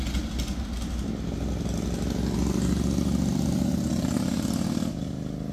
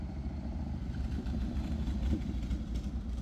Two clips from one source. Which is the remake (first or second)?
second